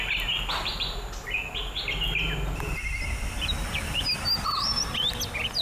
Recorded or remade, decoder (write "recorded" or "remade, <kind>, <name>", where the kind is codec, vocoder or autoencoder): recorded